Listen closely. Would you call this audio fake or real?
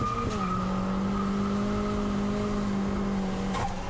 real